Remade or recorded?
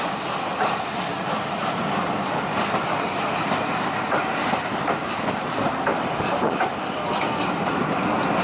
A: recorded